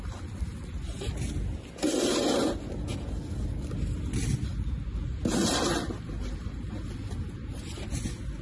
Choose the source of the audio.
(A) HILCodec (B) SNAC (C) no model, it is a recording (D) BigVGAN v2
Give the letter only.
C